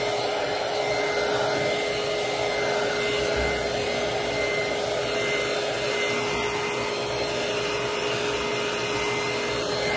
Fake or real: real